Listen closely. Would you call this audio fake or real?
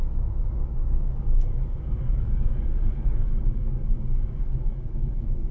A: fake